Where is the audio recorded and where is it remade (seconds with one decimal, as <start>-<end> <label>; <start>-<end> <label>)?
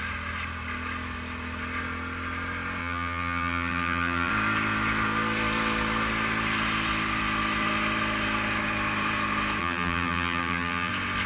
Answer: 0.0-2.8 recorded; 2.8-4.3 remade; 4.3-9.6 recorded; 9.6-10.9 remade; 10.9-11.3 recorded